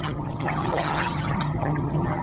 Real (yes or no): no